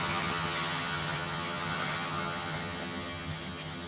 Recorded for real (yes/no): no